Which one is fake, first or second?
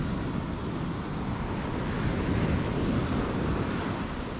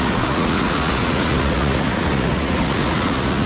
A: second